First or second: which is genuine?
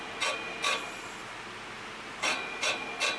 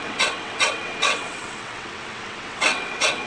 first